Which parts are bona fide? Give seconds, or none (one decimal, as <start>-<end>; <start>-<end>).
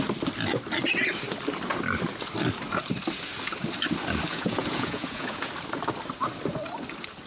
0.0-4.3; 5.5-7.3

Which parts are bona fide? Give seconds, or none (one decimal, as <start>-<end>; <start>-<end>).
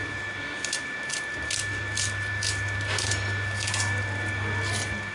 0.0-5.1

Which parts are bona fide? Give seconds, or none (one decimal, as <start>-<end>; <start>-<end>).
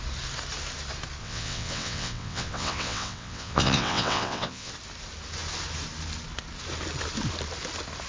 0.0-1.2; 4.7-8.1